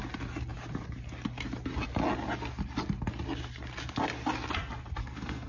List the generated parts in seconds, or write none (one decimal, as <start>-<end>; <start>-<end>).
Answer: 5.0-5.5